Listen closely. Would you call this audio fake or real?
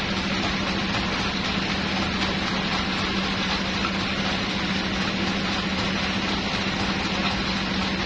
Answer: real